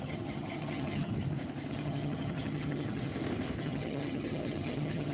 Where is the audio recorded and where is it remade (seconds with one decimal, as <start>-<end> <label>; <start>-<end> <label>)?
0.0-1.1 remade; 1.1-1.7 recorded; 1.7-3.1 remade; 3.1-3.6 recorded; 3.6-5.1 remade